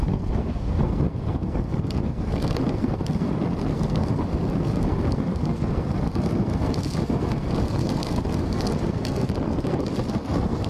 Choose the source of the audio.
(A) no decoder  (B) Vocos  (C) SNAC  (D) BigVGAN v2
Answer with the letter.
C